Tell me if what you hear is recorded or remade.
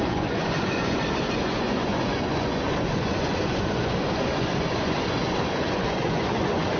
remade